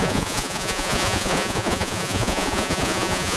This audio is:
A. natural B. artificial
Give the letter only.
B